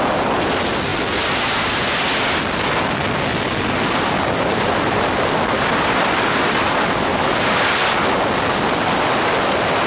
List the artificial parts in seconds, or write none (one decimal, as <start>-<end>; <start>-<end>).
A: none